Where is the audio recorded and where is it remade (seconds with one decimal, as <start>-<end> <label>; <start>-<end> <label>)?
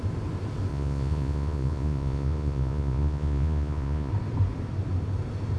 0.0-0.7 recorded; 0.7-4.1 remade; 4.1-5.6 recorded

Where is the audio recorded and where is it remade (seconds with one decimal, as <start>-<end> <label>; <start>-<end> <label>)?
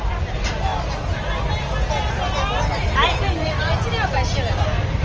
0.0-5.0 recorded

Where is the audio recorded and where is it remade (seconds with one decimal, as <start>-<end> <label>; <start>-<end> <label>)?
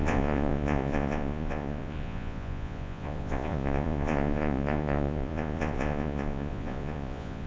0.0-7.5 remade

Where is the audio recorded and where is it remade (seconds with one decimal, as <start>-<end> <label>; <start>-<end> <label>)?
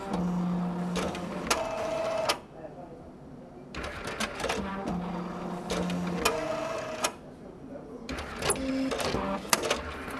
0.0-10.2 recorded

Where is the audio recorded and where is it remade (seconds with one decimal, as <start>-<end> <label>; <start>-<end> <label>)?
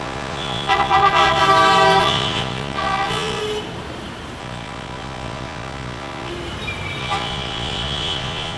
0.0-1.4 remade; 1.4-2.0 recorded; 2.0-3.4 remade; 3.4-4.4 recorded; 4.4-6.3 remade; 6.3-7.0 recorded; 7.0-8.6 remade